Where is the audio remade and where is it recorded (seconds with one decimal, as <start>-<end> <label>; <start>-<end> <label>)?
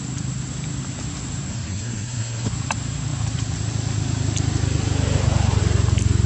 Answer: 0.0-1.5 recorded; 1.5-2.5 remade; 2.5-6.3 recorded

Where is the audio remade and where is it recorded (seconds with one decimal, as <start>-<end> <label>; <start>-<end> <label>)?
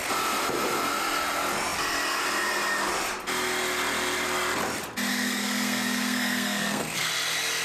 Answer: 0.0-5.1 recorded; 5.1-7.1 remade; 7.1-7.6 recorded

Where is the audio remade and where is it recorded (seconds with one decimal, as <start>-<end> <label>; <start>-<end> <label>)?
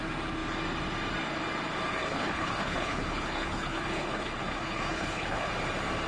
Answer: 0.0-1.9 recorded; 1.9-5.5 remade; 5.5-6.1 recorded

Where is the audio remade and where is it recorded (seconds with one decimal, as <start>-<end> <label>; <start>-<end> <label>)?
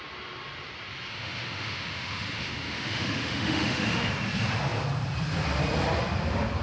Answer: 0.0-1.1 recorded; 1.1-4.1 remade; 4.1-6.6 recorded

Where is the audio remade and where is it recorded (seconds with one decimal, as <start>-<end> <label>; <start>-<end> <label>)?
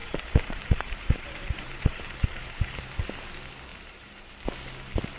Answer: 0.0-3.1 remade; 3.1-3.7 recorded; 3.7-4.3 remade; 4.3-5.2 recorded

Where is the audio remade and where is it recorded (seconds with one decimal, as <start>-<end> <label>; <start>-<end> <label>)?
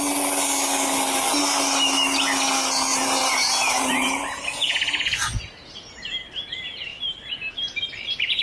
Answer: 0.0-2.9 recorded; 2.9-6.0 remade; 6.0-8.4 recorded